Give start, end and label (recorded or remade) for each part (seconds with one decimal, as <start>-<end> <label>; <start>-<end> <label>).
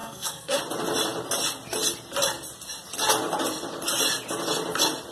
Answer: 0.0-0.6 remade; 0.6-5.1 recorded